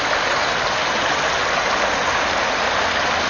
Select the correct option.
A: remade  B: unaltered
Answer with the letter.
B